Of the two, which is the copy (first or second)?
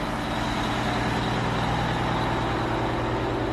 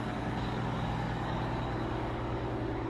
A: second